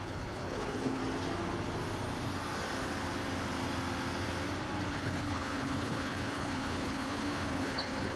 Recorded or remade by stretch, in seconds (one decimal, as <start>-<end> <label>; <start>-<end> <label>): 0.0-1.0 remade; 1.0-4.9 recorded; 4.9-8.2 remade